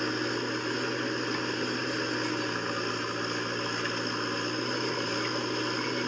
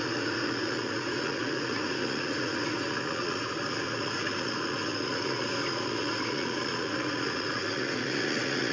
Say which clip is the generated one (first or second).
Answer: second